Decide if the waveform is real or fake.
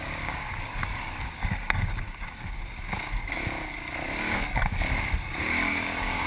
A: fake